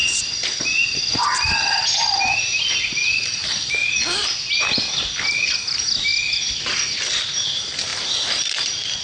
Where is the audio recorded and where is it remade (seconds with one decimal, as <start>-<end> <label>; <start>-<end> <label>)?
0.0-9.0 recorded